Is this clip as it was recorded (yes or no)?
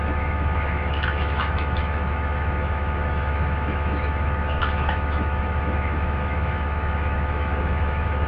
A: no